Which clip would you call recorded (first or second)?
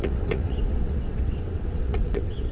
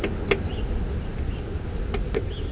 second